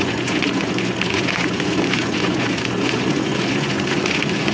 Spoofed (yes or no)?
yes